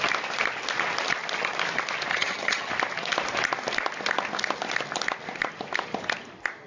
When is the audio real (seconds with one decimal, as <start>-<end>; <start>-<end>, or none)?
0.0-2.1; 2.7-6.7